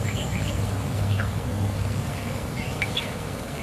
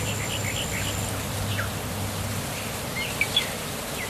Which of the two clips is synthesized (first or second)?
first